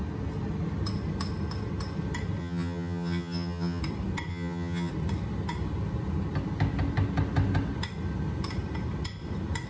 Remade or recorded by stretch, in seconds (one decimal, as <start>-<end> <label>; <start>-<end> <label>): 0.0-2.4 recorded; 2.4-3.8 remade; 3.8-4.3 recorded; 4.3-4.9 remade; 4.9-9.7 recorded